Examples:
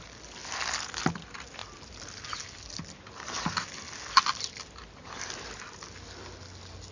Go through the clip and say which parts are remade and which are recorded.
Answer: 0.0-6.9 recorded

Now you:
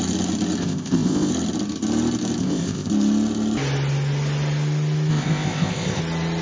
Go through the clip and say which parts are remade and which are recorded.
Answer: 0.0-0.6 recorded; 0.6-1.3 remade; 1.3-2.4 recorded; 2.4-2.9 remade; 2.9-5.1 recorded; 5.1-6.0 remade; 6.0-6.4 recorded

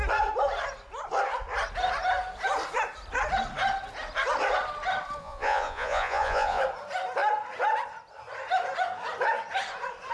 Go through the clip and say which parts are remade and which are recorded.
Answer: 0.0-5.2 recorded; 5.2-6.6 remade; 6.6-10.1 recorded

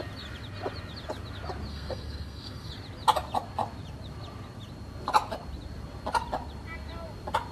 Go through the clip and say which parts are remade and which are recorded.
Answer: 0.0-1.7 recorded; 1.7-2.7 remade; 2.7-7.5 recorded

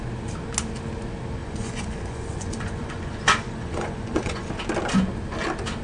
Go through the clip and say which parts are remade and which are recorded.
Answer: 0.0-1.4 recorded; 1.4-4.5 remade; 4.5-5.8 recorded

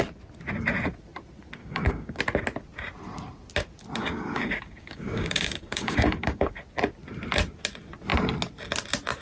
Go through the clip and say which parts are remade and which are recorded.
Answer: 0.0-1.6 recorded; 1.6-2.2 remade; 2.2-4.0 recorded; 4.0-6.6 remade; 6.6-9.2 recorded

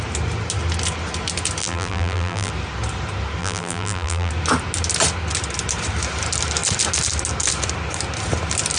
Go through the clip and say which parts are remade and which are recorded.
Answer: 0.0-1.6 recorded; 1.6-2.5 remade; 2.5-3.4 recorded; 3.4-4.3 remade; 4.3-8.8 recorded

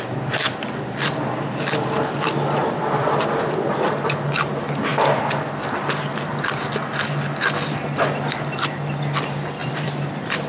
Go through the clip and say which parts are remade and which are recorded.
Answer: 0.0-2.6 recorded; 2.6-3.4 remade; 3.4-9.6 recorded; 9.6-10.5 remade